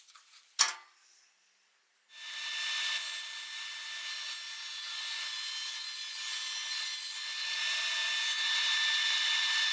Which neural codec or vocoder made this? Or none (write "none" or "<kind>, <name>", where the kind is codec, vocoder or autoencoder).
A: none